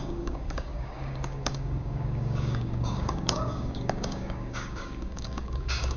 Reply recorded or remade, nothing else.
remade